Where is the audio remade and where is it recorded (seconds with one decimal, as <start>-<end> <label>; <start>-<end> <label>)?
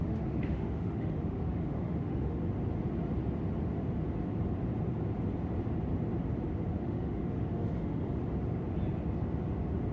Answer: 0.0-2.4 remade; 2.4-6.8 recorded; 6.8-8.2 remade; 8.2-9.9 recorded